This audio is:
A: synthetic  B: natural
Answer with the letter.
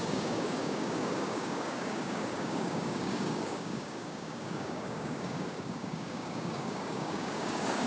A